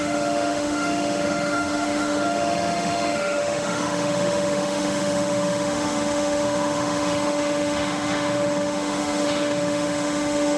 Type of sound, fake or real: fake